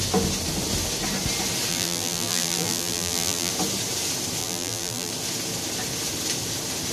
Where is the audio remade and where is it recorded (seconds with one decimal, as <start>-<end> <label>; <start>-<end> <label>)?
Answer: 0.0-1.7 recorded; 1.7-3.5 remade; 3.5-4.4 recorded; 4.4-5.1 remade; 5.1-6.9 recorded